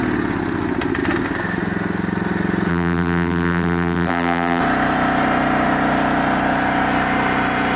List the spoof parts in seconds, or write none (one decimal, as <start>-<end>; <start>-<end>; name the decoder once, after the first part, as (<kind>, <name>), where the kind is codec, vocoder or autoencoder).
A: 2.7-4.6 (vocoder, BigVGAN v2)